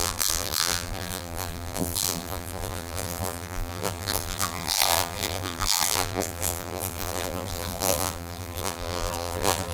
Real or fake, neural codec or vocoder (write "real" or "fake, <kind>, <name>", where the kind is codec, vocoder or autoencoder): fake, vocoder, BigVGAN v2